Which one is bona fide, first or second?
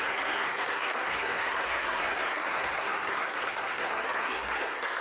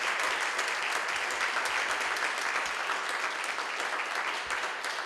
second